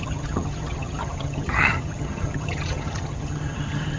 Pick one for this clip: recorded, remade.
remade